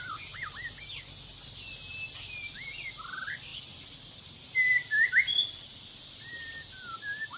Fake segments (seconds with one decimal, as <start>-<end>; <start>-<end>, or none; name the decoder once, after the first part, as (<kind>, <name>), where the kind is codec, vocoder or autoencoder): none